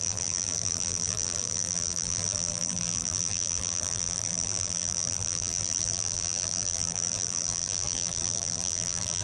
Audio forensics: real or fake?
fake